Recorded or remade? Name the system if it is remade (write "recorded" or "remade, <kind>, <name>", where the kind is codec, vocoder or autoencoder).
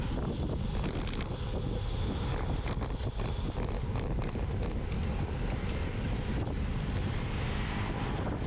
recorded